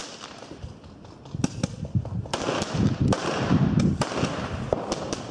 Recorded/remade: recorded